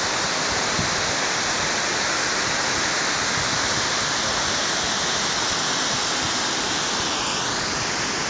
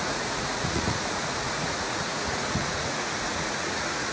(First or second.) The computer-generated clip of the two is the second